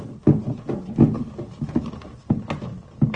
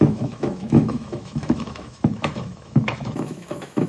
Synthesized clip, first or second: second